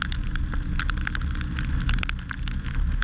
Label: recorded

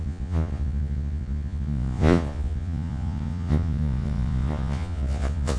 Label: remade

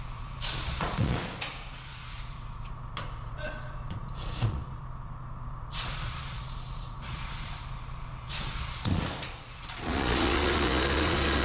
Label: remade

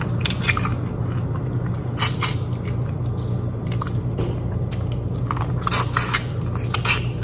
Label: recorded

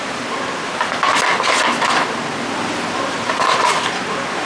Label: recorded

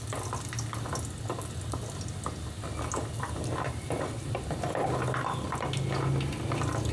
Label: recorded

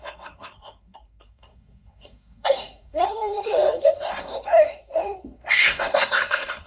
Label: remade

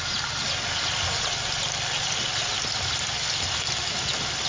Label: recorded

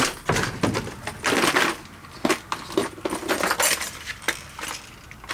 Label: recorded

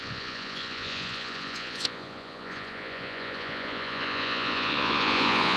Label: remade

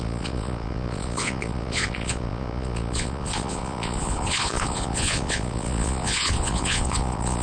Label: remade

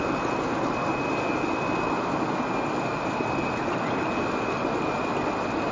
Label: recorded